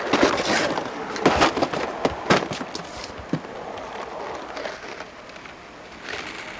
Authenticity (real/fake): real